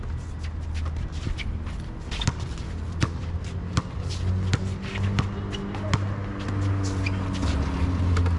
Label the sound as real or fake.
real